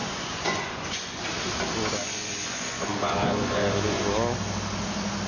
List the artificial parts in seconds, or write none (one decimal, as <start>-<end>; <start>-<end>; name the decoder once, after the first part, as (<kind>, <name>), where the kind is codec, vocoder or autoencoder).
0.0-1.2 (vocoder, Vocos); 2.0-4.0